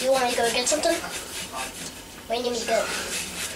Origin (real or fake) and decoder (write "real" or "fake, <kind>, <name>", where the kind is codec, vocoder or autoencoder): fake, vocoder, BigVGAN v2